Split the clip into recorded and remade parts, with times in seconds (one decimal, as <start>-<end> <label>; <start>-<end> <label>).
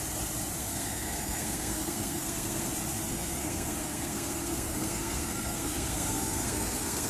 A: 0.0-0.6 recorded; 0.6-2.7 remade; 2.7-3.1 recorded; 3.1-7.1 remade